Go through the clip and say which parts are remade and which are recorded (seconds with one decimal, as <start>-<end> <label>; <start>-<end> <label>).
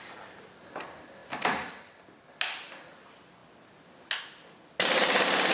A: 0.0-5.5 recorded